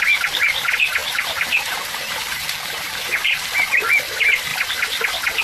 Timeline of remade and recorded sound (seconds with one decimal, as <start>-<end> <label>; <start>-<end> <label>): 0.0-1.0 recorded; 1.0-3.8 remade; 3.8-5.4 recorded